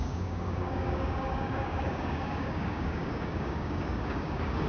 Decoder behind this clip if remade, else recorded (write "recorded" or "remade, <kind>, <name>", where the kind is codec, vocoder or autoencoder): remade, codec, DAC